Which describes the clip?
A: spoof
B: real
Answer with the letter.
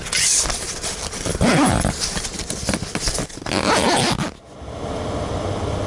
B